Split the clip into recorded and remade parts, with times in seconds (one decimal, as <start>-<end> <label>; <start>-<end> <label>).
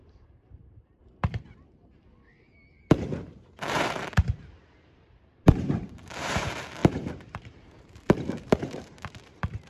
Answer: 0.0-1.0 remade; 1.0-2.9 recorded; 2.9-9.7 remade